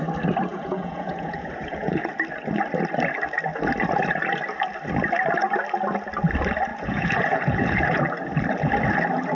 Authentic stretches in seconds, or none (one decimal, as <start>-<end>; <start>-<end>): 0.0-0.5; 2.1-6.7; 8.0-9.3